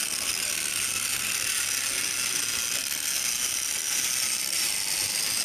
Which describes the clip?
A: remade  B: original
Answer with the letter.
A